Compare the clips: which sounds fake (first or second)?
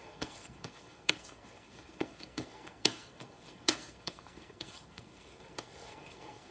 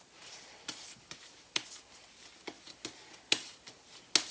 first